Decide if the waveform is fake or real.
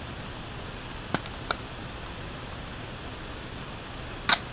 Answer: real